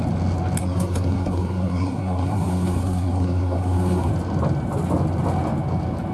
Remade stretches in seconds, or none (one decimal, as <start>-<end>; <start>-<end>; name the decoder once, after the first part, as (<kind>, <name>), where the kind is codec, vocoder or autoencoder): 0.6-4.1 (codec, SNAC)